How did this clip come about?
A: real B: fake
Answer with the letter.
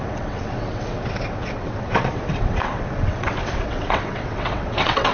B